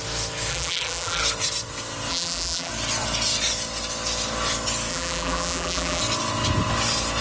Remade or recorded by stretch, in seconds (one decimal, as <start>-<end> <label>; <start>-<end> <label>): 0.0-0.5 recorded; 0.5-1.2 remade; 1.2-2.1 recorded; 2.1-2.7 remade; 2.7-4.9 recorded; 4.9-6.0 remade; 6.0-7.2 recorded